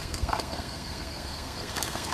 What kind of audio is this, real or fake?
fake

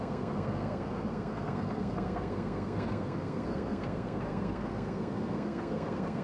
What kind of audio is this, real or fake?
fake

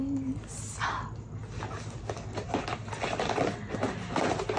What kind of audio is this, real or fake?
real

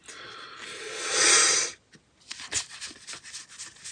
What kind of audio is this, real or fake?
real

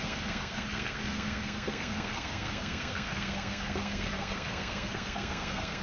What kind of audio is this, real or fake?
fake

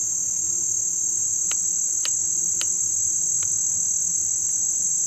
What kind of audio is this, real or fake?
real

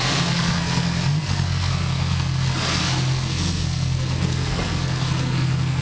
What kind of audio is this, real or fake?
fake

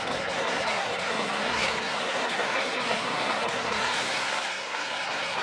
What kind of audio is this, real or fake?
fake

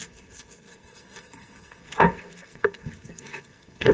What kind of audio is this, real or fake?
fake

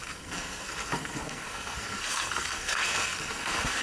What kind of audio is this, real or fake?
fake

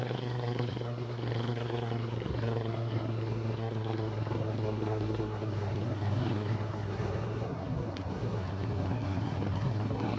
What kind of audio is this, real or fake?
fake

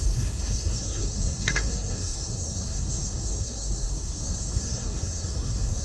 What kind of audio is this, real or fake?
fake